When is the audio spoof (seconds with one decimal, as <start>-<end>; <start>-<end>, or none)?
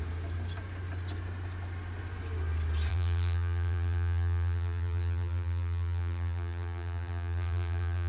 2.9-8.1